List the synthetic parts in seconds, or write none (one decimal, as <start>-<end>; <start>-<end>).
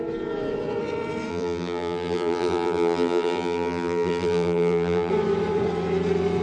1.3-5.1